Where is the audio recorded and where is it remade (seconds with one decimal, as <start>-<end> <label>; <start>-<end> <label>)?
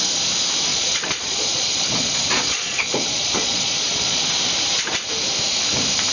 0.0-0.7 recorded; 0.7-4.4 remade; 4.4-6.1 recorded